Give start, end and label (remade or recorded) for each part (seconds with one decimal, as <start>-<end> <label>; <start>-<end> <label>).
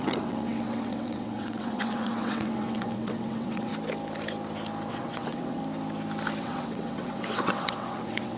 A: 0.0-3.7 remade; 3.7-4.9 recorded; 4.9-5.6 remade; 5.6-6.4 recorded; 6.4-8.4 remade